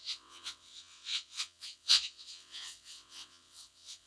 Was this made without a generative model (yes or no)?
no